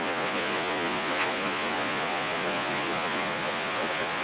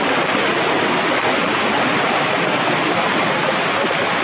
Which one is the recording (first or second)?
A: second